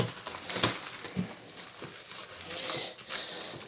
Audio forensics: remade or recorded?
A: recorded